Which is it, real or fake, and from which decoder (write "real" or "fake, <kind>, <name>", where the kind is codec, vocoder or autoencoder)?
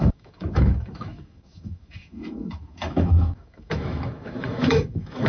fake, autoencoder, DAC-VAE